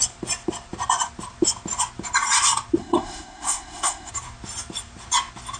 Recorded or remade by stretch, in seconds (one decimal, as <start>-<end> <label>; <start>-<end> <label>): 0.0-2.8 recorded; 2.8-4.1 remade; 4.1-5.6 recorded